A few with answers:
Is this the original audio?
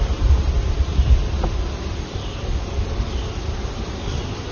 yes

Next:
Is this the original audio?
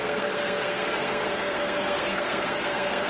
no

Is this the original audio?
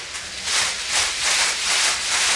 yes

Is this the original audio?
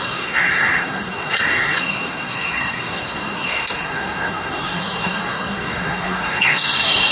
no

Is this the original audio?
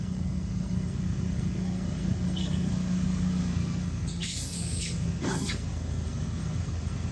no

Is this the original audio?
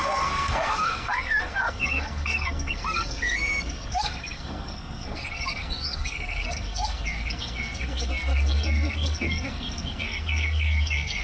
no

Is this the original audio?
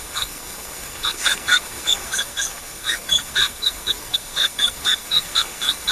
no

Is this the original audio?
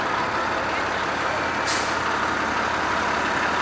yes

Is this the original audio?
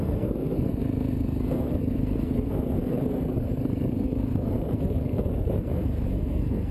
no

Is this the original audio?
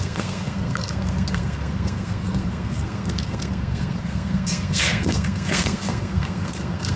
no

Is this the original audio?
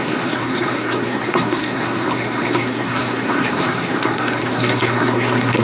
no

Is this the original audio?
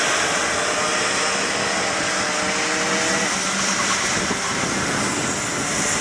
yes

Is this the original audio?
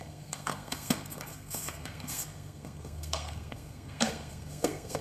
no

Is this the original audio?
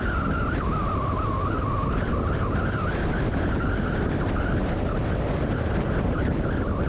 yes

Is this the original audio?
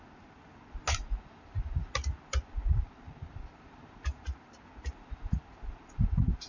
yes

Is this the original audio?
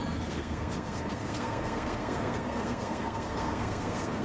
no